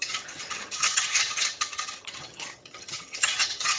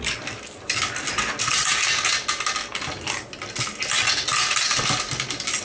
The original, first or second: second